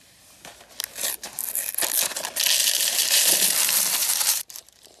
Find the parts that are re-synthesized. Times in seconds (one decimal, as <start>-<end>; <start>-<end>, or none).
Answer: 2.6-3.2; 4.0-5.0